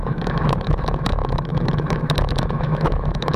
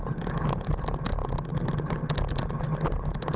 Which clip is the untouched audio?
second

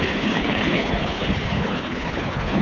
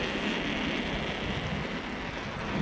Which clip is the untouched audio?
second